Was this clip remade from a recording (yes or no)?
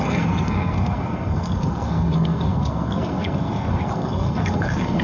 yes